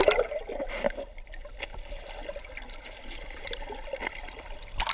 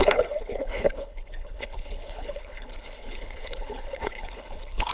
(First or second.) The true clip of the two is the first